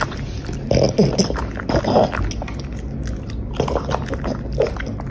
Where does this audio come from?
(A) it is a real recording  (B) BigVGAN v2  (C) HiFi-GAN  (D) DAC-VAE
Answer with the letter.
A